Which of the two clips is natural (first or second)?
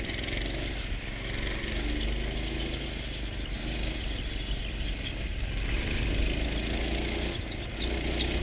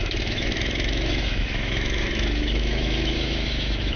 first